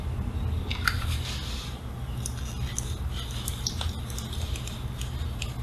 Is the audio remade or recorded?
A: recorded